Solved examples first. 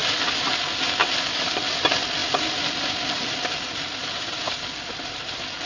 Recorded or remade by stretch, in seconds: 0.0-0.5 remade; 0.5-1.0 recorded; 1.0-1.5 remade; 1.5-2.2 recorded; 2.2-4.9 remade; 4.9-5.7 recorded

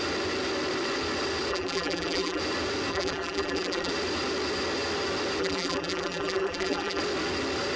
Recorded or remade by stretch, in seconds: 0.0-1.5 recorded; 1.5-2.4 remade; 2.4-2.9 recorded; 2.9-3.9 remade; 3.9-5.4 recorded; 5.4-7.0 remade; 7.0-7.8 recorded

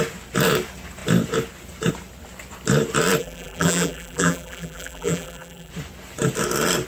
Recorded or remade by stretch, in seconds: 0.0-3.2 recorded; 3.2-5.7 remade; 5.7-6.9 recorded

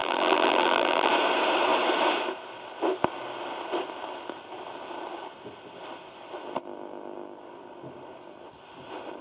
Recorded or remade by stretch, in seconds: 0.0-1.1 remade; 1.1-9.2 recorded

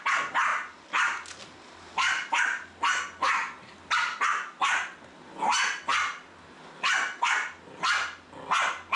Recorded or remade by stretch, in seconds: 0.0-9.0 recorded

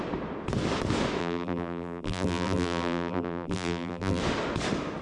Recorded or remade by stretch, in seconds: 0.0-1.2 recorded; 1.2-4.2 remade; 4.2-5.0 recorded

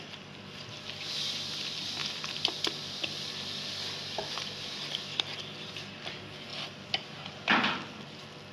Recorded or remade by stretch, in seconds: 0.0-8.5 recorded

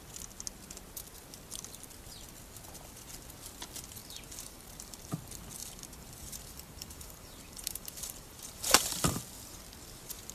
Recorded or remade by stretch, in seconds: 0.0-4.0 recorded; 4.0-5.1 remade; 5.1-5.6 recorded; 5.6-9.2 remade; 9.2-10.3 recorded